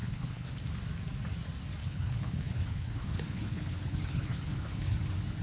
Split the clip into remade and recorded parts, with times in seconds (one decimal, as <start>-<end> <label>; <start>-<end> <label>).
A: 0.0-0.6 remade; 0.6-1.8 recorded; 1.8-5.0 remade; 5.0-5.4 recorded